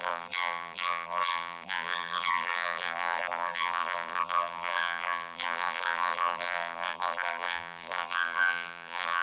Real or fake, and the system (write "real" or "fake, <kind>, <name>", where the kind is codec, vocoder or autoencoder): fake, vocoder, BigVGAN v2